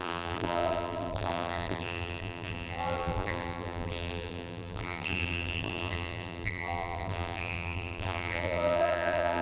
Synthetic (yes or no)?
yes